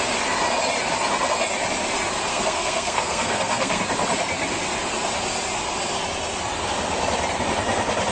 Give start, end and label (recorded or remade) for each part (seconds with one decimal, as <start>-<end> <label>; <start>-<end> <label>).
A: 0.0-2.3 recorded; 2.3-3.8 remade; 3.8-8.1 recorded